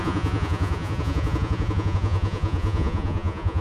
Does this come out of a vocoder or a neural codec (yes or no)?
yes